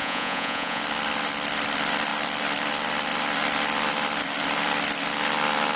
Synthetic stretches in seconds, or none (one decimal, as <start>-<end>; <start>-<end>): 0.0-0.8